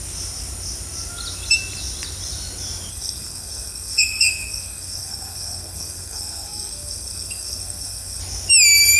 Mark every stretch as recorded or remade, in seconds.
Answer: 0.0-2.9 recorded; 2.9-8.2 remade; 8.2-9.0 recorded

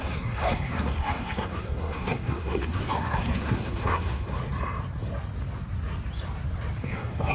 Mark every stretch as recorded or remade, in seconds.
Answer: 0.0-4.4 remade; 4.4-6.8 recorded; 6.8-7.3 remade